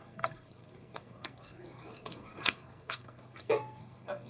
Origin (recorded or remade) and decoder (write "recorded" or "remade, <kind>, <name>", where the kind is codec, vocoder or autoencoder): remade, codec, SNAC